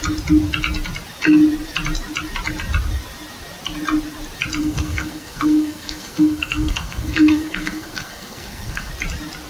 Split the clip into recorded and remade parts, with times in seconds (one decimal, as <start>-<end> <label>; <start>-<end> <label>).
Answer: 0.0-4.6 recorded; 4.6-8.9 remade; 8.9-9.5 recorded